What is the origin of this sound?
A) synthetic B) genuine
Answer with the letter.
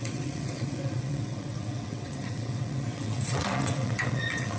A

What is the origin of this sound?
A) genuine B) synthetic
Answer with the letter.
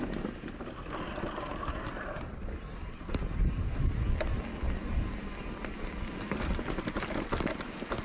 A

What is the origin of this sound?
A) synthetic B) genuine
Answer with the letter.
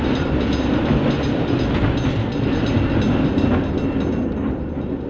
B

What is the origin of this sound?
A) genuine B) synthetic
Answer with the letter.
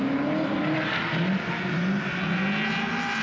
A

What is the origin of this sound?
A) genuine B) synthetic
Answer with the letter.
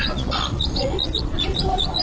B